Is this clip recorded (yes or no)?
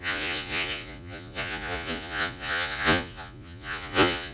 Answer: no